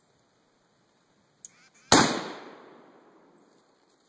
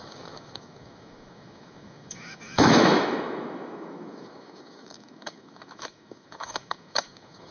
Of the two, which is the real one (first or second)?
first